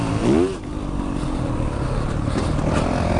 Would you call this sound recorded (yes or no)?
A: yes